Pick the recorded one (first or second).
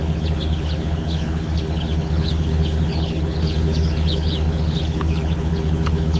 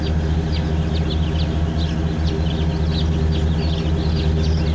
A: second